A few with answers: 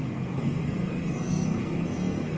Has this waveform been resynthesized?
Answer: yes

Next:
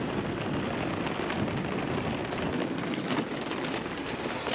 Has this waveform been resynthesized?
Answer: no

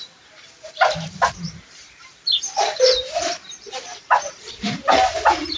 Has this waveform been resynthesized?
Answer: yes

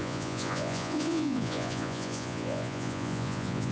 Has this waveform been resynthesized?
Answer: yes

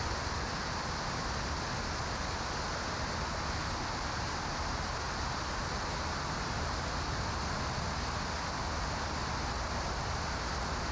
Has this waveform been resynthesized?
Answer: no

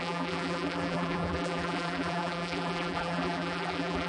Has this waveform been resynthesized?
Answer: yes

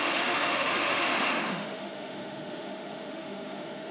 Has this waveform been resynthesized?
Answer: yes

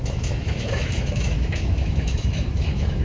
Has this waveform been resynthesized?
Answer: yes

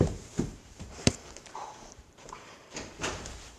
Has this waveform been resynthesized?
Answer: yes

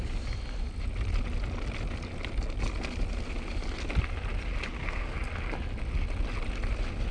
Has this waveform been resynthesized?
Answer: no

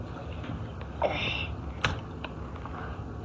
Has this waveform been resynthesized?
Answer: no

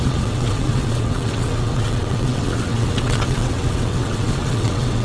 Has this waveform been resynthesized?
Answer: yes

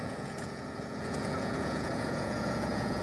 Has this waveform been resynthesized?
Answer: yes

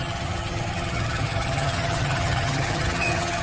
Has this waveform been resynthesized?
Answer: yes